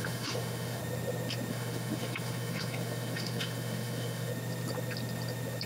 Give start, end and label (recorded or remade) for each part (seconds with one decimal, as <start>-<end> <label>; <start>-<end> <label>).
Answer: 0.0-0.8 remade; 0.8-1.5 recorded; 1.5-4.3 remade; 4.3-5.7 recorded